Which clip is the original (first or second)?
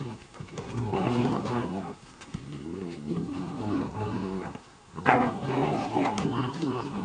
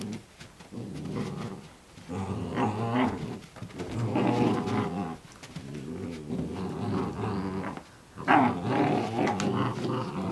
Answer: second